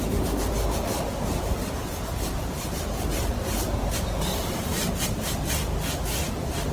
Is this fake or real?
real